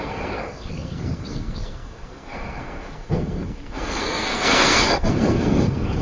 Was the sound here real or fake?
fake